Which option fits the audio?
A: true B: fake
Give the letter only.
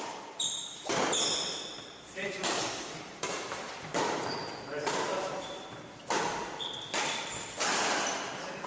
B